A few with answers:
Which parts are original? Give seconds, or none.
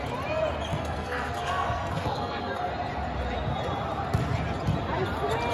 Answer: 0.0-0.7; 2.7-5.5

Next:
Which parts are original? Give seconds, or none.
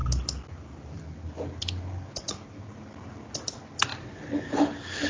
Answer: 0.0-5.1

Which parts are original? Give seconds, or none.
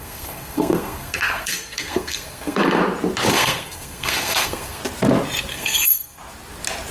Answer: 2.8-3.3; 4.8-5.5; 6.2-6.9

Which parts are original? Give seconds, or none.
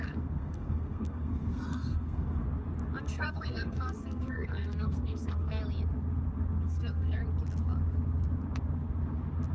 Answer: 2.4-3.0; 5.6-6.5; 7.2-9.5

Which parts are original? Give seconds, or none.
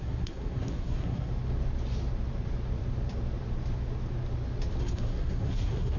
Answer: 1.3-4.8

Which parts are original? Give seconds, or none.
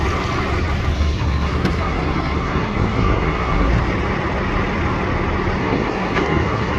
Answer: 0.0-0.9; 3.7-5.6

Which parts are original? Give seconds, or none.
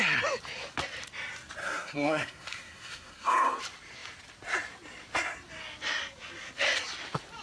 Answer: 0.0-1.6; 3.6-7.4